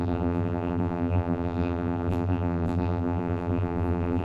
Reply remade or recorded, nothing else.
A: remade